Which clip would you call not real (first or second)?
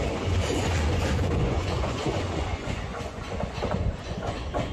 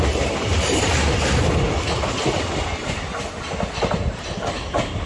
first